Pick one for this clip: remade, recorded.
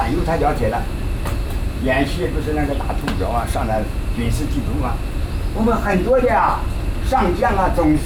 recorded